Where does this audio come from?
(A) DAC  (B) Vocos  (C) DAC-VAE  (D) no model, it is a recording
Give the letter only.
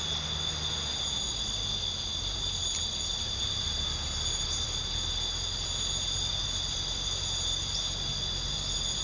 D